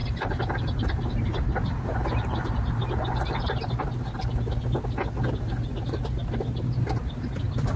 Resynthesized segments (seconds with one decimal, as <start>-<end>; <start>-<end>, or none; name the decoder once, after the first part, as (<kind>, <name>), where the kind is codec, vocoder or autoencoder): 0.0-3.5 (vocoder, BigVGAN v2)